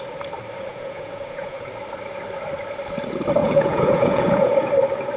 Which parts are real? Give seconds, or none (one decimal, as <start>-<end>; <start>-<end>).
0.0-0.7; 1.7-3.4; 4.7-5.2